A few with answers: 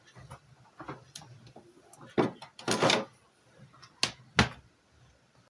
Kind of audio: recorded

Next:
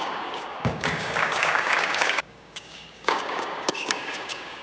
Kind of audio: remade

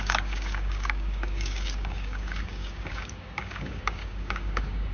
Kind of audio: remade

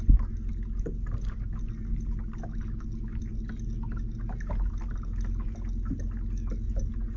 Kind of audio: recorded